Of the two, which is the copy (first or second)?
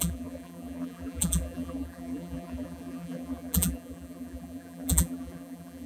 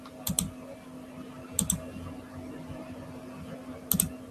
first